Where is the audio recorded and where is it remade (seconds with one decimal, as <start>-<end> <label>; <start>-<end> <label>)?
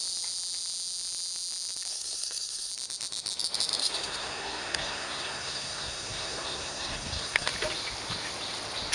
0.0-1.9 recorded; 1.9-2.7 remade; 2.7-3.8 recorded; 3.8-7.5 remade; 7.5-8.9 recorded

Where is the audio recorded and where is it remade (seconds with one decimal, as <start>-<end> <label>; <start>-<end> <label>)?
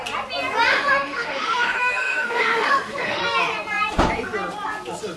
0.0-0.7 recorded; 0.7-3.2 remade; 3.2-5.2 recorded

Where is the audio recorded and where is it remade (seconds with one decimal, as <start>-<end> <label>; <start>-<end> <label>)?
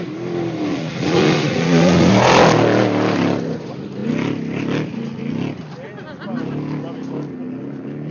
0.0-0.7 recorded; 0.7-2.1 remade; 2.1-8.1 recorded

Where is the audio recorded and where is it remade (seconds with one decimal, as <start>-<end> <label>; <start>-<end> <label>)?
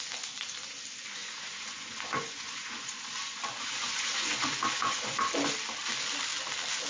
0.0-1.2 recorded; 1.2-5.3 remade; 5.3-6.9 recorded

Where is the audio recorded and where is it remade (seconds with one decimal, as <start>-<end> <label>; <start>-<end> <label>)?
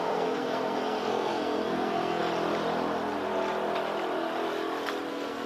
0.0-2.2 remade; 2.2-5.1 recorded; 5.1-5.5 remade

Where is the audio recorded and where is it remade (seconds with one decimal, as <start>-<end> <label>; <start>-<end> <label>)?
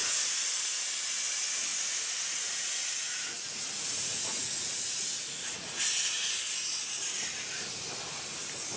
0.0-1.7 recorded; 1.7-5.8 remade; 5.8-8.8 recorded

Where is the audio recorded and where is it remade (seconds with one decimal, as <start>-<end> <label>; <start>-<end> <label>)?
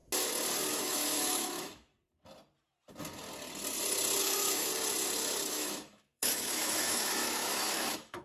0.0-0.7 recorded; 0.7-1.9 remade; 1.9-4.2 recorded; 4.2-4.7 remade; 4.7-5.5 recorded; 5.5-8.2 remade